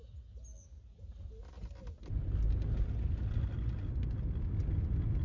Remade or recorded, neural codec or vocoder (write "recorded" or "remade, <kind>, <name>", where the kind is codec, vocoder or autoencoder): recorded